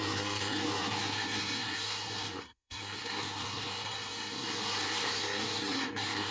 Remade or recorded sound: remade